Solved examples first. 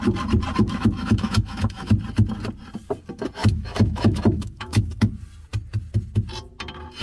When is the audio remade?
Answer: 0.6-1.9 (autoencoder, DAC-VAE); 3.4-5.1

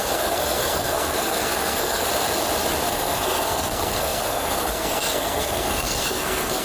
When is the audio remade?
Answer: 0.0-2.1 (codec, SNAC); 2.9-6.6

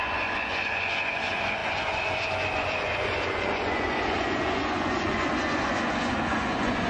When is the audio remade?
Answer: 0.0-6.9 (vocoder, Vocos)